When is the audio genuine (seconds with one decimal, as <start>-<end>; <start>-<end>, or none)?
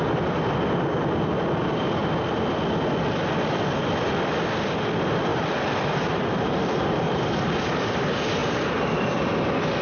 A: 0.0-5.3; 7.5-8.4; 9.3-9.8